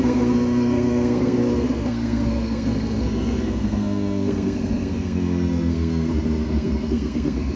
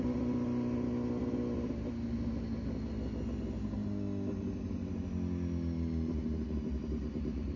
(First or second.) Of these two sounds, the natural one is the second